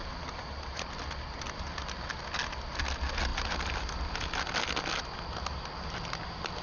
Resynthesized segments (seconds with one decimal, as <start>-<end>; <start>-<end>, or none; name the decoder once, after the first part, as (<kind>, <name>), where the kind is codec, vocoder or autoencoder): none